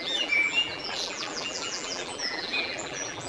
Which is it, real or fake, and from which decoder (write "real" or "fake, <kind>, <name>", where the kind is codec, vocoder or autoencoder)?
fake, vocoder, BigVGAN v2